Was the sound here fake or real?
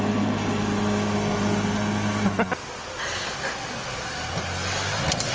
real